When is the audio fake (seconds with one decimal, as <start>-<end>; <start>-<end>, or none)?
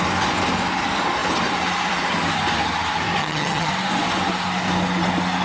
3.2-3.7